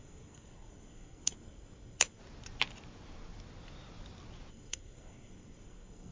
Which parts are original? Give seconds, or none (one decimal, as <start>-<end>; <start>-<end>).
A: 2.2-4.5